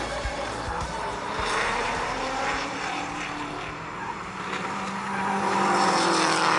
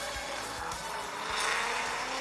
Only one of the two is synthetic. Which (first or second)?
first